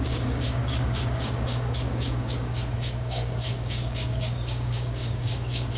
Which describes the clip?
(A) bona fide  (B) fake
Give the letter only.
B